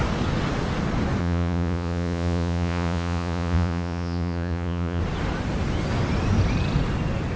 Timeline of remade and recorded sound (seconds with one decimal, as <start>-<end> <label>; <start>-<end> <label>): 0.0-1.2 recorded; 1.2-5.0 remade; 5.0-7.4 recorded